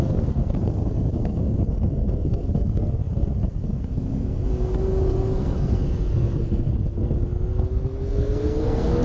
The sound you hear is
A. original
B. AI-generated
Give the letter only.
B